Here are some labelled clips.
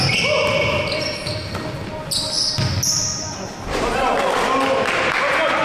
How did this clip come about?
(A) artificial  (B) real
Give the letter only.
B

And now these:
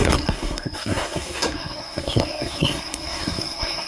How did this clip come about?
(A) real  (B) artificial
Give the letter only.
B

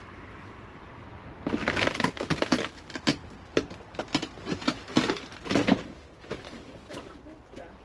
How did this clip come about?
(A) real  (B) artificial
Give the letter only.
A